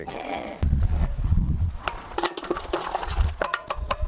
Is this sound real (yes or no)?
no